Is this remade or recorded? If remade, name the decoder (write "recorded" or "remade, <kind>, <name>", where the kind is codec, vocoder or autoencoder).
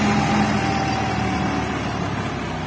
recorded